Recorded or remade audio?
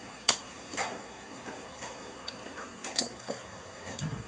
remade